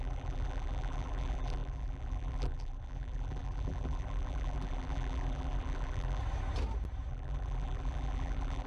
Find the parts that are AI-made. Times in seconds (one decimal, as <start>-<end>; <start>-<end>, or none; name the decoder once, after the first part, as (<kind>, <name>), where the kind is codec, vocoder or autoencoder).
0.0-6.2 (vocoder, BigVGAN v2); 7.1-8.7